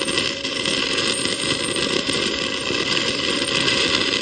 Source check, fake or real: fake